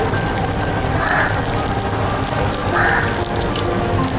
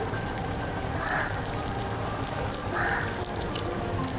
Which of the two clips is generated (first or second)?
second